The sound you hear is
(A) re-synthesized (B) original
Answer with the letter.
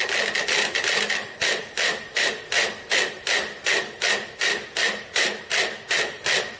B